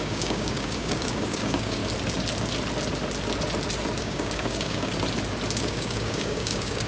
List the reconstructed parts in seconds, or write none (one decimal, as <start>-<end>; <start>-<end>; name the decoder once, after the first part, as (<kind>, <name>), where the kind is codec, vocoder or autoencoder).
0.0-1.8 (codec, DAC); 4.0-4.9; 5.6-6.9